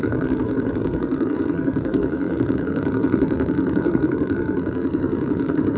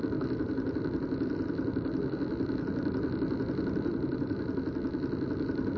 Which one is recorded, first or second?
second